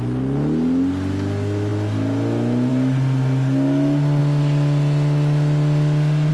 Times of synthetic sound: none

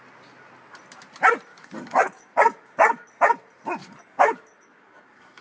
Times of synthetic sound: 1.5-3.1 (codec, DAC); 3.8-5.4

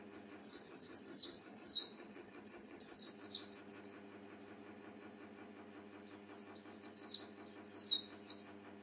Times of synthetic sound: 0.4-3.1 (vocoder, HiFi-GAN)

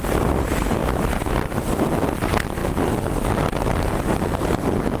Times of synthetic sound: none

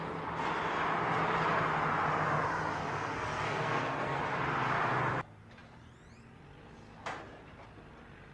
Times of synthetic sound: 2.8-4.2 (codec, SNAC)

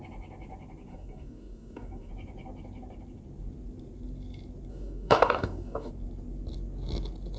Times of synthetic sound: 0.9-2.1 (codec, DAC); 4.7-5.9